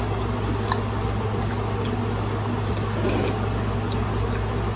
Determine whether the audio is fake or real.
real